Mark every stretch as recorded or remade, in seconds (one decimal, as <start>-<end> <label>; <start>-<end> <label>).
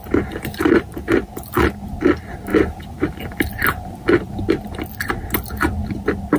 0.0-1.1 remade; 1.1-6.4 recorded